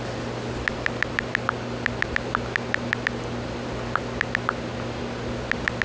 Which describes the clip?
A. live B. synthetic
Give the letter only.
A